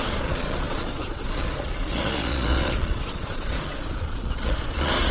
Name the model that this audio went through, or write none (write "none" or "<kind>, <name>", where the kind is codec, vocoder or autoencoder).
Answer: vocoder, Vocos